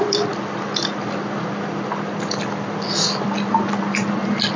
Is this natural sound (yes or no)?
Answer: yes